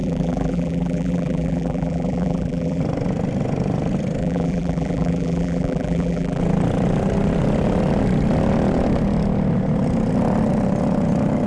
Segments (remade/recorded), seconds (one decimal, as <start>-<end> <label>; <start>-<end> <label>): 0.0-2.8 remade; 2.8-4.2 recorded; 4.2-6.4 remade; 6.4-11.5 recorded